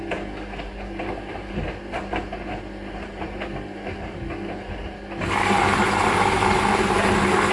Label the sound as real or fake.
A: real